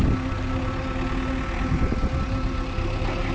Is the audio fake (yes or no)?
no